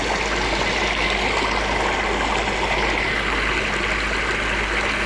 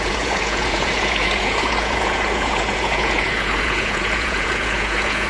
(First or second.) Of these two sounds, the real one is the first